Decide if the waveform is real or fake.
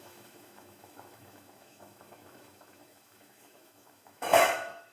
fake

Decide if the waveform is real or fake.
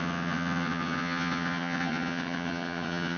fake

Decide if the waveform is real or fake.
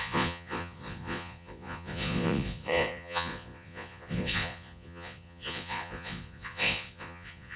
fake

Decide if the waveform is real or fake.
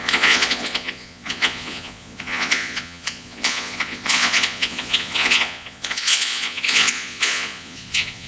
fake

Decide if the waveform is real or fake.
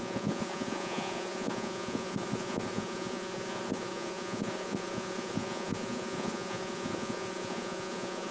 fake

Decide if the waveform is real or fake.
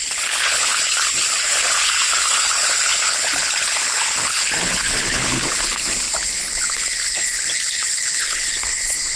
fake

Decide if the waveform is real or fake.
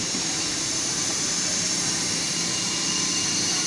fake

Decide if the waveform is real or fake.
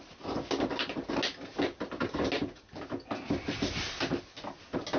real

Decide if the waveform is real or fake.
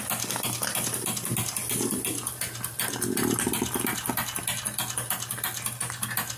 real